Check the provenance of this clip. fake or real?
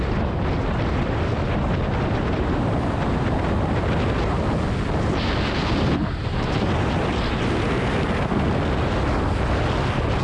real